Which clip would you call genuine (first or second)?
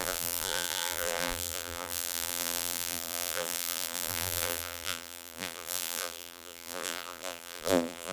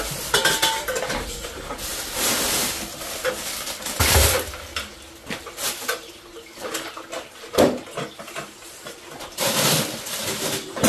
second